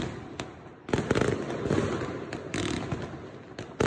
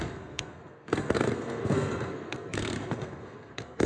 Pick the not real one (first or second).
second